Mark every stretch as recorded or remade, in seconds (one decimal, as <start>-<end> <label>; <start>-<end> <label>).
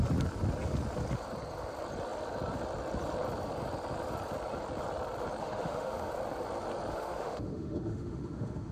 0.0-5.4 recorded; 5.4-6.1 remade; 6.1-6.9 recorded; 6.9-8.7 remade